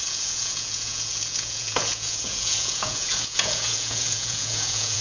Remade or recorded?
remade